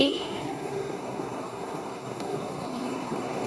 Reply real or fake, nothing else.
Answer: fake